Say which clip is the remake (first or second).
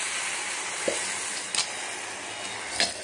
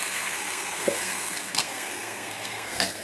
second